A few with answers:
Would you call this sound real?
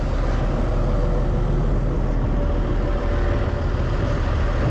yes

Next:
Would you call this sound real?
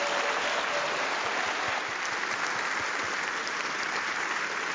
yes